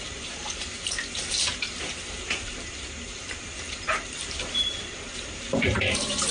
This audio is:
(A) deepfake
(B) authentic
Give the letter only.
A